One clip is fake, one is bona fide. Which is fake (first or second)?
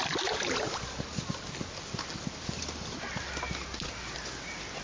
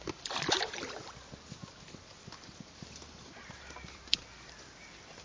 second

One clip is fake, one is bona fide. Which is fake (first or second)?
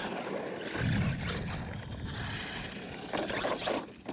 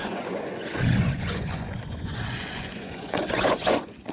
second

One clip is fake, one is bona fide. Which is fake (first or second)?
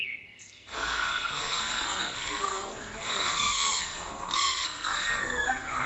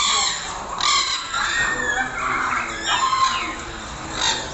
first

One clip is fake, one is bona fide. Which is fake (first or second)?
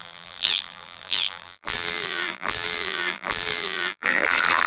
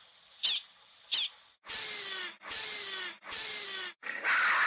first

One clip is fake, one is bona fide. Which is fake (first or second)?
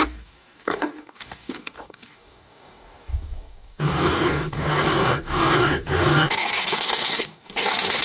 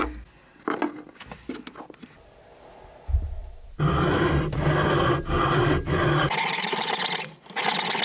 first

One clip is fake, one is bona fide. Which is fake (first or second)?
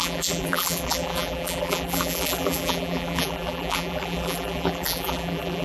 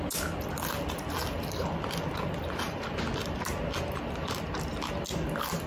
first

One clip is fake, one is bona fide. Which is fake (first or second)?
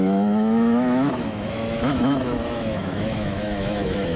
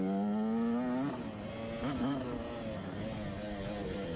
first